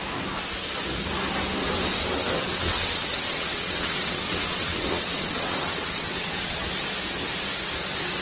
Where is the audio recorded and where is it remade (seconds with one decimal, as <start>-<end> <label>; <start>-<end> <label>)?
0.0-2.2 recorded; 2.2-6.6 remade; 6.6-8.2 recorded